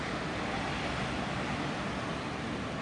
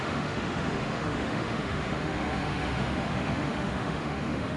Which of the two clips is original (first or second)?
first